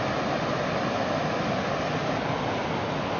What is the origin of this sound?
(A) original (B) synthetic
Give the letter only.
A